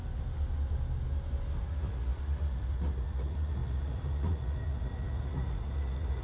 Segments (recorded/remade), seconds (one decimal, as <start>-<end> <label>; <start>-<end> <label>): 0.0-1.6 recorded; 1.6-6.2 remade

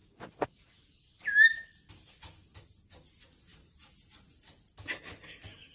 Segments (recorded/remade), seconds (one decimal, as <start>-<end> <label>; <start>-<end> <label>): 0.0-5.7 recorded

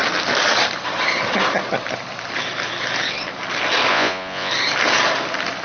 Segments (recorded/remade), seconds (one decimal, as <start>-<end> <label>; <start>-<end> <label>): 0.0-3.9 recorded; 3.9-4.5 remade; 4.5-5.6 recorded